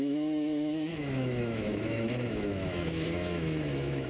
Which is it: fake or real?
fake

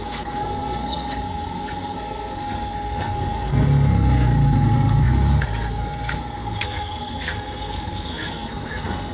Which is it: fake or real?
fake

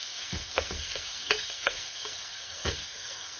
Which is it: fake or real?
fake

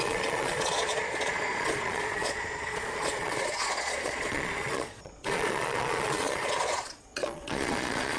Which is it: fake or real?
fake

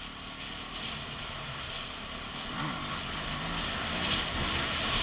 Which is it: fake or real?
real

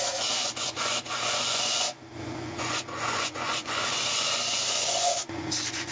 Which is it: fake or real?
fake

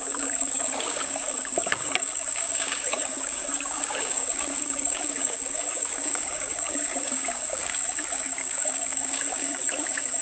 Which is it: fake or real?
fake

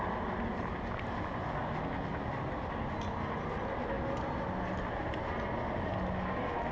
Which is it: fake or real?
real